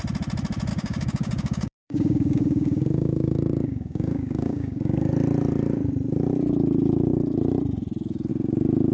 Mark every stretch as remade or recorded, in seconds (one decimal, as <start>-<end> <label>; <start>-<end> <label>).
0.0-0.7 recorded; 0.7-5.1 remade; 5.1-8.9 recorded